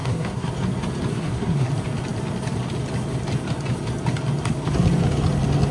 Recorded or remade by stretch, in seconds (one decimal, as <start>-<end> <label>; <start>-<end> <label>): 0.0-0.5 remade; 0.5-1.1 recorded; 1.1-1.7 remade; 1.7-5.7 recorded